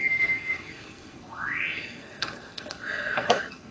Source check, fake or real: fake